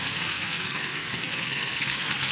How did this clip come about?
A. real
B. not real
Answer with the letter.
B